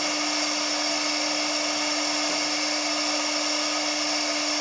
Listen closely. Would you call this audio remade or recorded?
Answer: recorded